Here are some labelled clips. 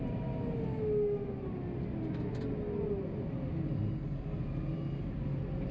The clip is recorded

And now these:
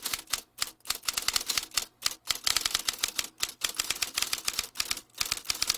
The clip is recorded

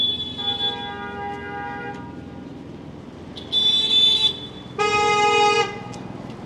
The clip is recorded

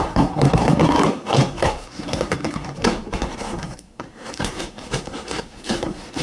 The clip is remade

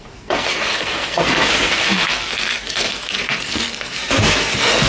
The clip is remade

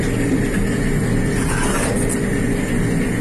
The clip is recorded